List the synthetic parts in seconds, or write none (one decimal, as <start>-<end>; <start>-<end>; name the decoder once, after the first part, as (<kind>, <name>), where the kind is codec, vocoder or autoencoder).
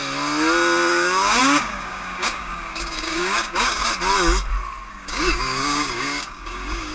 0.9-3.8 (codec, DAC); 4.9-6.9